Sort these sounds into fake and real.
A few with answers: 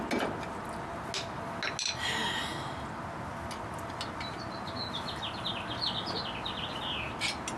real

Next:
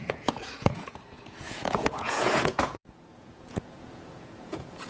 fake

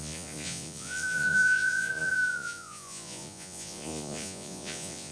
fake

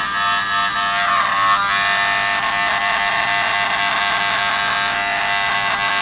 real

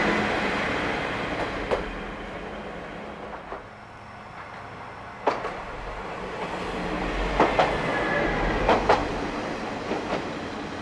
real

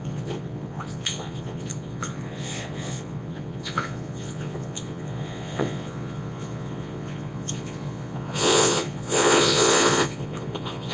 fake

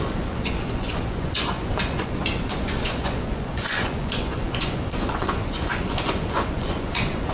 fake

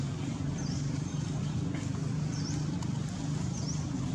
real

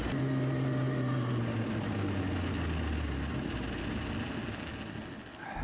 real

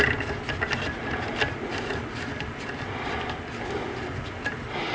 real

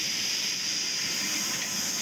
real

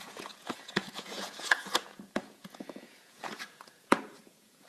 fake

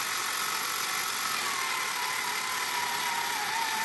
real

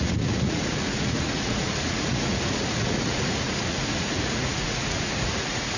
fake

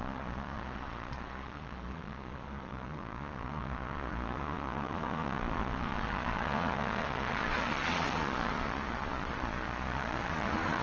fake